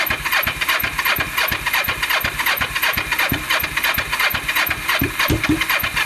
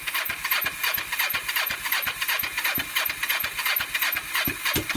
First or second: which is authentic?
first